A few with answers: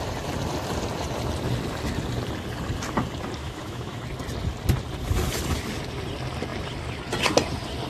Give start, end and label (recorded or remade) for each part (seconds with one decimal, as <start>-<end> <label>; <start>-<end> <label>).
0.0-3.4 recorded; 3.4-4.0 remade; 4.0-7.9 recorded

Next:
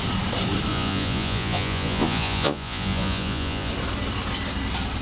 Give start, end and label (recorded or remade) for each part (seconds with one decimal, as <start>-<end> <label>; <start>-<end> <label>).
0.0-0.7 recorded; 0.7-3.7 remade; 3.7-5.0 recorded

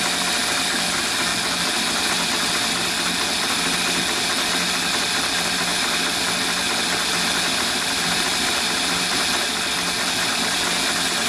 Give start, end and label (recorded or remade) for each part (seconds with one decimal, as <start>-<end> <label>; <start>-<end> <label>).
0.0-7.5 recorded; 7.5-8.8 remade; 8.8-11.3 recorded

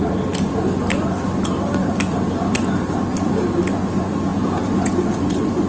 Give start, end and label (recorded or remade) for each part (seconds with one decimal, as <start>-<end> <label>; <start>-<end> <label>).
0.0-4.3 recorded; 4.3-5.2 remade; 5.2-5.7 recorded

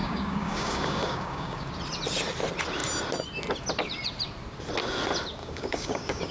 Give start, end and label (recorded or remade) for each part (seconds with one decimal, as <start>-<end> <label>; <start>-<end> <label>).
0.0-1.7 remade; 1.7-5.4 recorded; 5.4-6.3 remade